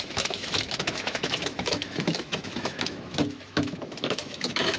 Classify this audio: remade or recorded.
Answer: remade